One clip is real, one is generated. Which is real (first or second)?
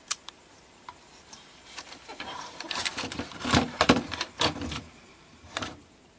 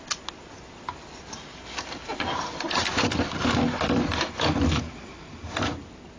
second